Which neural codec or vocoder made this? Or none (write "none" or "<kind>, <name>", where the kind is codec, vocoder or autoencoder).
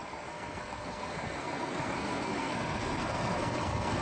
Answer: codec, SNAC